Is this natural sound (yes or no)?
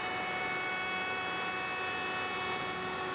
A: yes